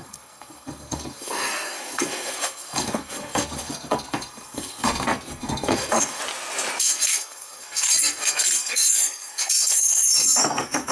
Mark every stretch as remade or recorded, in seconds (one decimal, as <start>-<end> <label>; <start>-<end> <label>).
0.0-6.2 remade; 6.2-6.8 recorded; 6.8-10.9 remade